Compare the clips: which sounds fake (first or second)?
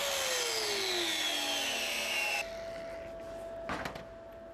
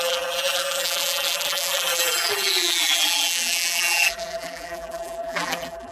second